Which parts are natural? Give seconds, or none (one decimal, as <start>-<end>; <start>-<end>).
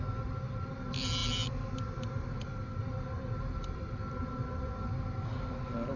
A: 0.0-6.0